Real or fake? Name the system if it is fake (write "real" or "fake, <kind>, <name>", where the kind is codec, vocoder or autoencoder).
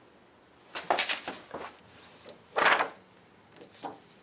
real